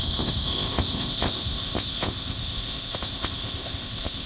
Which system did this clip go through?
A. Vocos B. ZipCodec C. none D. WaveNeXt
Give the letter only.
B